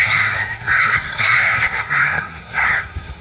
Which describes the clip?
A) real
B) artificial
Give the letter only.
B